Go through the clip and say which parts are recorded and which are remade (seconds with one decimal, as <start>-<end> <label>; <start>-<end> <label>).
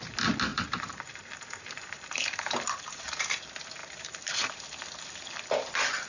0.0-0.5 recorded; 0.5-3.4 remade; 3.4-3.8 recorded; 3.8-4.6 remade; 4.6-6.1 recorded